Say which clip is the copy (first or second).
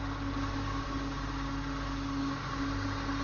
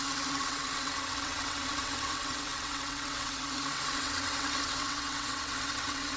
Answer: second